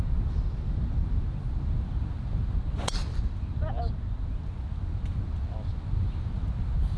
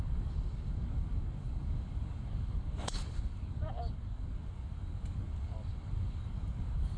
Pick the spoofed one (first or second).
second